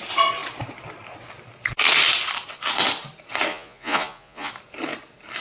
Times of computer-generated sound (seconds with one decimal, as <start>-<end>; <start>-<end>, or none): 3.5-4.5